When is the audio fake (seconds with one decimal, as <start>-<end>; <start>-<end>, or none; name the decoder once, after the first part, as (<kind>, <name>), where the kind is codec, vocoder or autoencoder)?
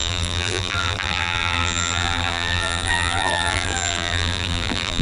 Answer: 0.0-5.0 (vocoder, BigVGAN v2)